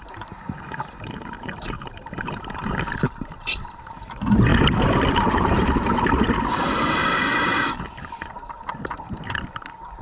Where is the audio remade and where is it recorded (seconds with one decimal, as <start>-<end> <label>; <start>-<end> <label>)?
0.0-4.5 remade; 4.5-5.1 recorded; 5.1-7.5 remade; 7.5-10.0 recorded